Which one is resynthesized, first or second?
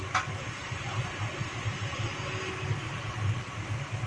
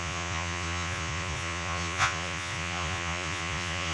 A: second